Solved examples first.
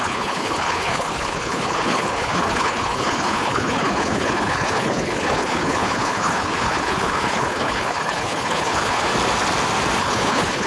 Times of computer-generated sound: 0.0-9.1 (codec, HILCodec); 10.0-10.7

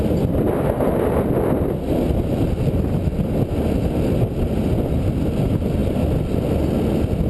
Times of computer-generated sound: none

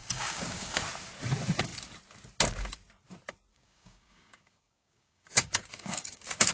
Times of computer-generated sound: 0.0-0.8 (codec, DAC); 3.5-6.5